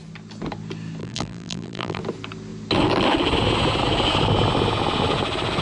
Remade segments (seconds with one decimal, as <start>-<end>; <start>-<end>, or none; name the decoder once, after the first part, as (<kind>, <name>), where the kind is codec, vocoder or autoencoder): 1.0-2.0 (vocoder, BigVGAN v2)